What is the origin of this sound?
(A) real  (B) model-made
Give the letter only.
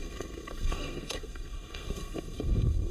B